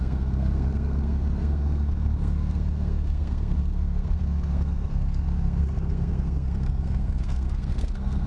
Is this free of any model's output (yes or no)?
no